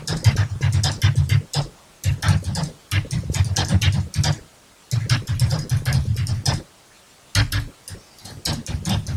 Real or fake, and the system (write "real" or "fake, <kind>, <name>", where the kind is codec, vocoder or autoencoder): real